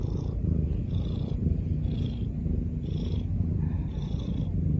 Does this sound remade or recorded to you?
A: recorded